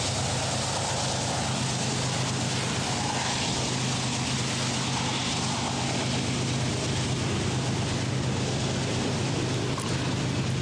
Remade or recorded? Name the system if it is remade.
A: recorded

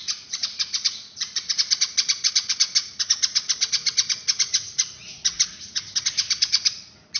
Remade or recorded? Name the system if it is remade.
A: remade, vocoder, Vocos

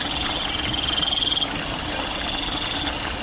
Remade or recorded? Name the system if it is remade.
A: recorded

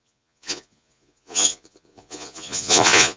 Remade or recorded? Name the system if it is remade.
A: remade, vocoder, Vocos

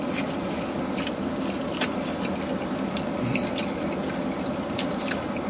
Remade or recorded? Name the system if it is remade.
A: recorded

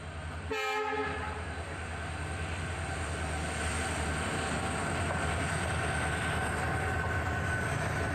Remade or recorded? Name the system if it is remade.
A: recorded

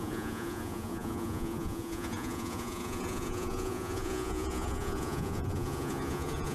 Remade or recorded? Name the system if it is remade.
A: remade, vocoder, Vocos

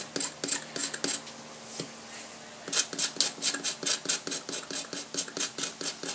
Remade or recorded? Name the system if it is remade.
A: recorded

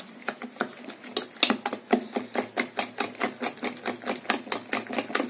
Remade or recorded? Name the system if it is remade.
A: recorded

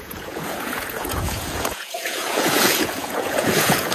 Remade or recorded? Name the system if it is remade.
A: remade, vocoder, Vocos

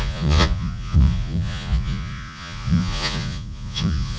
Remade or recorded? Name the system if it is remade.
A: remade, vocoder, Vocos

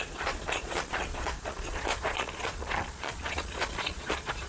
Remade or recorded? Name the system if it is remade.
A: remade, vocoder, Vocos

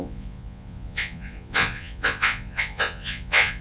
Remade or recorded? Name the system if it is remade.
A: remade, vocoder, Vocos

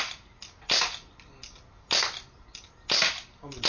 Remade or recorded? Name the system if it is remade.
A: recorded